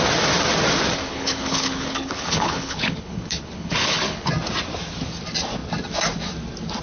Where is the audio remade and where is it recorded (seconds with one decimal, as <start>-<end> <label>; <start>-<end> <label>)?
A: 0.0-1.0 recorded; 1.0-4.3 remade; 4.3-6.8 recorded